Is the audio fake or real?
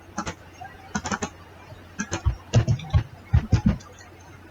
real